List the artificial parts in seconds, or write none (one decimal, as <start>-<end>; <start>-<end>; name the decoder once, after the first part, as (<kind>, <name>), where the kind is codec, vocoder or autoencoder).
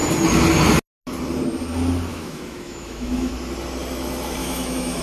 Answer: 2.1-3.3 (autoencoder, DAC-VAE); 4.4-5.0